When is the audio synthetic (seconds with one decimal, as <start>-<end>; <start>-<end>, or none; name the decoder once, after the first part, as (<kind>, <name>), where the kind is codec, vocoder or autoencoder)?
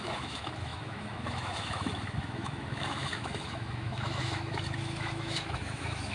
0.0-6.1 (autoencoder, DAC-VAE)